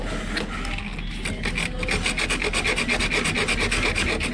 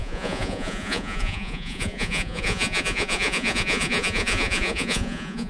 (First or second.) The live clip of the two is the first